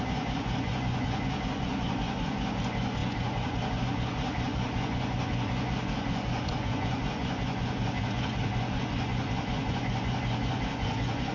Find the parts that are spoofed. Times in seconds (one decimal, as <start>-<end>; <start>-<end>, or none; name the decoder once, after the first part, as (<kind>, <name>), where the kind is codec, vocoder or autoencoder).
0.0-11.3 (vocoder, Vocos)